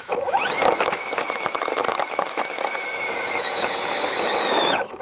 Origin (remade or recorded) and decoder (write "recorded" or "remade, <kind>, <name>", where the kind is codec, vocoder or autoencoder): remade, autoencoder, DAC-VAE